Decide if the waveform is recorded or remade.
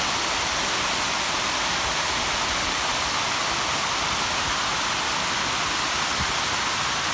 recorded